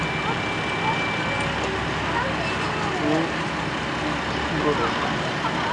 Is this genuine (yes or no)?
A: yes